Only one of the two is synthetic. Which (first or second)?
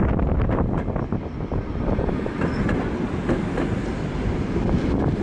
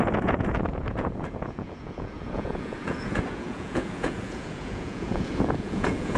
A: second